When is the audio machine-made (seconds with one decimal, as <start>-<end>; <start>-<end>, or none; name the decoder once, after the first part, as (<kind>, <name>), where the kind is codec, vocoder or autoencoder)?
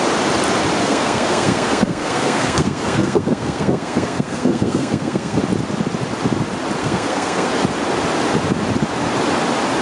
0.8-5.4 (codec, SNAC); 6.8-7.5